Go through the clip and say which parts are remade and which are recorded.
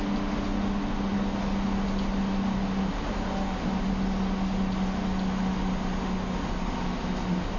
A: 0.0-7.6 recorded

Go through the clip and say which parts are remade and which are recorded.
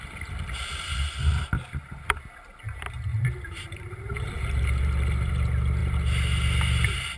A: 0.0-3.1 recorded; 3.1-5.3 remade; 5.3-7.2 recorded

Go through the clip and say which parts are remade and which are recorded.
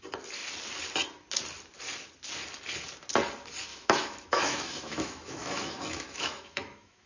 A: 0.0-3.7 recorded; 3.7-7.1 remade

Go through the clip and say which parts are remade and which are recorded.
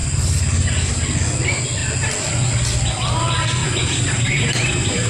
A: 0.0-0.9 remade; 0.9-3.6 recorded; 3.6-5.1 remade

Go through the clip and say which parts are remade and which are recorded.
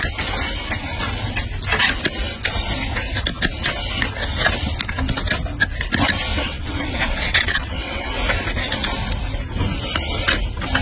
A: 0.0-6.3 recorded; 6.3-8.1 remade; 8.1-10.8 recorded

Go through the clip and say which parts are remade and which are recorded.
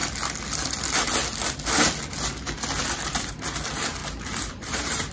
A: 0.0-2.8 recorded; 2.8-4.0 remade; 4.0-4.5 recorded; 4.5-5.1 remade